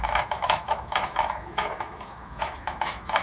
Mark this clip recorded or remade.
remade